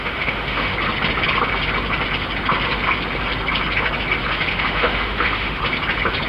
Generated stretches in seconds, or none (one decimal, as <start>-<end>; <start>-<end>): 0.0-0.7; 4.5-5.6